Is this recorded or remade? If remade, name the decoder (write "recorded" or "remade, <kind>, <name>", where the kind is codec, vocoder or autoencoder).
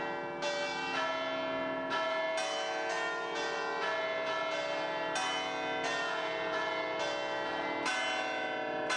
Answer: recorded